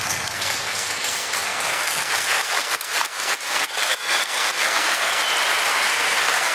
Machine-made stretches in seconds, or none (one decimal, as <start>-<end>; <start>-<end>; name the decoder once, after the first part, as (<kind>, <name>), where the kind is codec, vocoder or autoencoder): 0.0-5.2 (codec, SNAC); 5.7-6.5